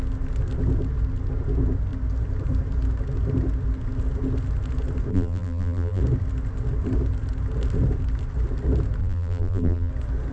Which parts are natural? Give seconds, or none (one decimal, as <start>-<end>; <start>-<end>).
0.0-5.1; 6.0-9.0; 9.9-10.3